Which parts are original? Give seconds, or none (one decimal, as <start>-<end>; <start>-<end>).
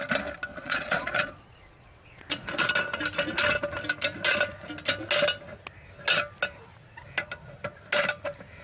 0.0-0.5; 2.7-8.6